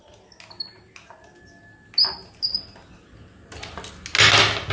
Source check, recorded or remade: recorded